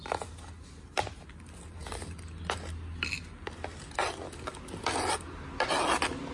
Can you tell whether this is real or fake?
real